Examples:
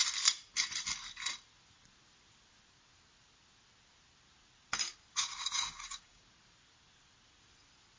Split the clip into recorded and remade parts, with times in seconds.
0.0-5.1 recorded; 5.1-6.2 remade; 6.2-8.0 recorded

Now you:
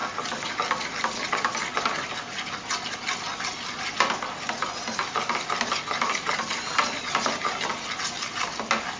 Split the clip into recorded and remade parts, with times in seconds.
0.0-9.0 recorded

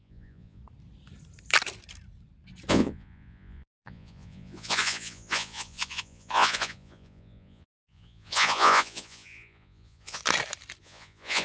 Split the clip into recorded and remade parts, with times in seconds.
0.0-0.6 remade; 0.6-2.7 recorded; 2.7-10.2 remade; 10.2-10.8 recorded; 10.8-11.4 remade

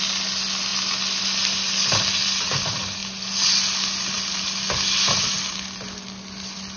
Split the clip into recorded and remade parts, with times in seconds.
0.0-6.8 recorded

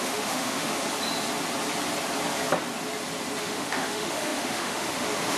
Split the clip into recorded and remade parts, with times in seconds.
0.0-0.7 remade; 0.7-3.4 recorded; 3.4-5.4 remade

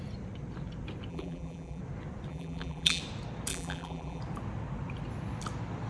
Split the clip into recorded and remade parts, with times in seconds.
0.0-1.1 recorded; 1.1-1.8 remade; 1.8-2.3 recorded; 2.3-3.0 remade; 3.0-3.5 recorded; 3.5-4.2 remade; 4.2-5.9 recorded

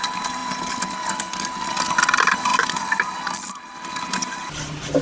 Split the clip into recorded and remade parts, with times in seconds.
0.0-5.0 recorded

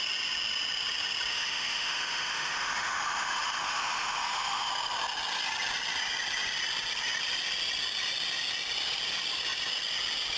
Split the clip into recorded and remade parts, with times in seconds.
0.0-1.3 recorded; 1.3-4.7 remade; 4.7-10.4 recorded